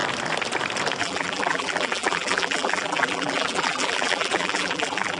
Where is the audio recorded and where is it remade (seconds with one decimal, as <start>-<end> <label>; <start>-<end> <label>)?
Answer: 0.0-1.0 recorded; 1.0-5.2 remade